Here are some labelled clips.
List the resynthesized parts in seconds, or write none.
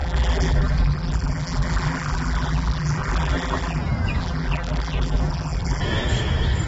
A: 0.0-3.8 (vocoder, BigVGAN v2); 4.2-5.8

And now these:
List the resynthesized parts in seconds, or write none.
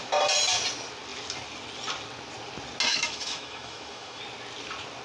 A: 2.9-4.2 (autoencoder, DAC-VAE)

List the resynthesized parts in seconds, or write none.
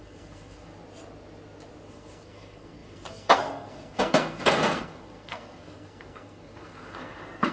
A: 0.0-0.7 (codec, SNAC); 1.9-7.5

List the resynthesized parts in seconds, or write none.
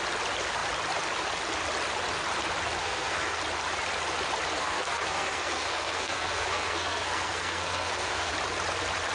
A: 2.8-3.4 (codec, SNAC); 4.6-8.3